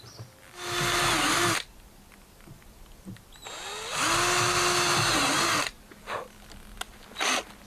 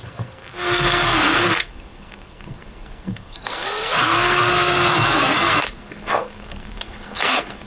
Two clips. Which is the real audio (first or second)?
first